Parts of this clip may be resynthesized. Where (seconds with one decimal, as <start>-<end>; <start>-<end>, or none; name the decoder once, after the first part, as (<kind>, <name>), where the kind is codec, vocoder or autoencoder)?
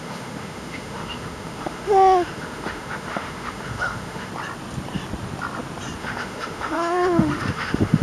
0.0-4.3 (autoencoder, DAC-VAE); 6.0-8.0